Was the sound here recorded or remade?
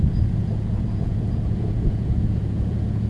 remade